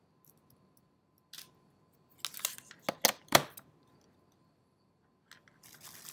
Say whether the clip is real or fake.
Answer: real